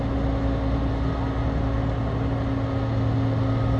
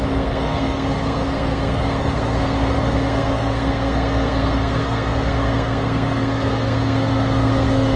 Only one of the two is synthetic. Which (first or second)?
second